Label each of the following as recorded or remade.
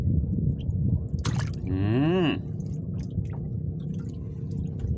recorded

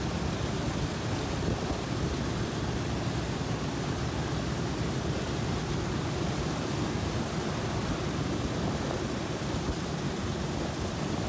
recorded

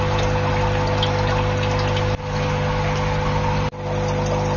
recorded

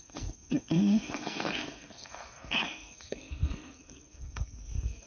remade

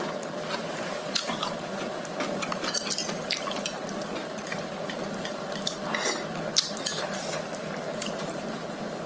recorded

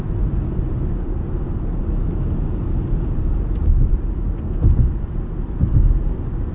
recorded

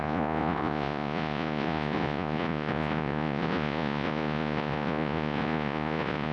remade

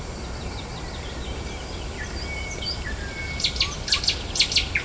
recorded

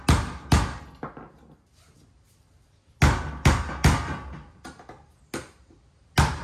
recorded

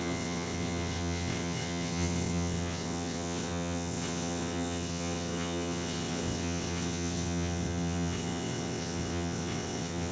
remade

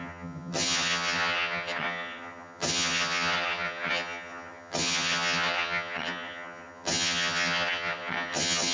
remade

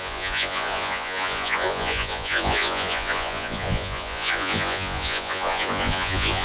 remade